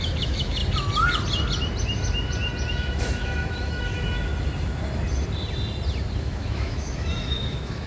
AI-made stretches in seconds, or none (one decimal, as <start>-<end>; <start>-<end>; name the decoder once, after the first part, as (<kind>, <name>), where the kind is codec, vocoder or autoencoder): 0.0-0.6 (autoencoder, DAC-VAE); 2.7-4.3; 6.2-7.9

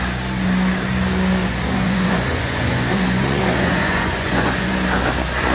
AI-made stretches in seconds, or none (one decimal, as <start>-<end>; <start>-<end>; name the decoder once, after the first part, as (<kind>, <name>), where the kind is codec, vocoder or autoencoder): 1.4-4.7 (vocoder, Vocos)

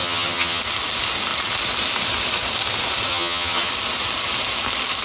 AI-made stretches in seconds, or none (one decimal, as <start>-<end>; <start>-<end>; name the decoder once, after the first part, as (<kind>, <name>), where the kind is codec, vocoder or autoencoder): 0.0-0.6 (vocoder, HiFi-GAN); 3.1-3.7

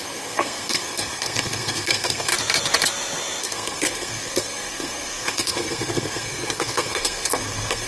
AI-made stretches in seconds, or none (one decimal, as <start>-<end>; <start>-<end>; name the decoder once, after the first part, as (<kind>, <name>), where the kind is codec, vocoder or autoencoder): 0.0-2.3 (codec, SNAC); 3.4-7.9

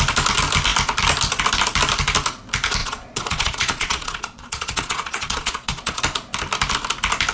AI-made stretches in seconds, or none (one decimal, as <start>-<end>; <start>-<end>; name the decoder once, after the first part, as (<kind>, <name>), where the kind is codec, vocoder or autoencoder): 2.8-6.0 (vocoder, Vocos)

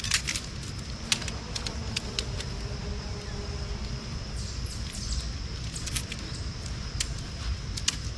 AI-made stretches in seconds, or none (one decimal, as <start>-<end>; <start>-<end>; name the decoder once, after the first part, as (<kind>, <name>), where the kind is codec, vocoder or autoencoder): none